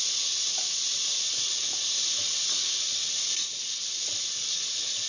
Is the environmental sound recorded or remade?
recorded